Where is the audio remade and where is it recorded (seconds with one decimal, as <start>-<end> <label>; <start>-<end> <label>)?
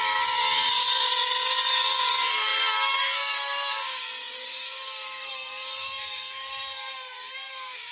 0.0-7.9 remade